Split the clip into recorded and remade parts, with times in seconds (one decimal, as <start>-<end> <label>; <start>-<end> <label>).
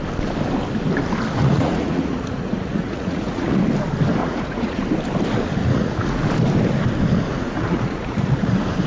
0.0-1.4 recorded; 1.4-3.6 remade; 3.6-4.2 recorded; 4.2-4.8 remade; 4.8-5.6 recorded; 5.6-6.2 remade; 6.2-7.3 recorded; 7.3-8.5 remade; 8.5-8.9 recorded